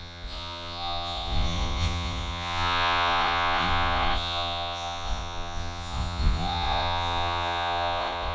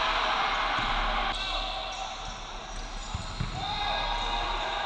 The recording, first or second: second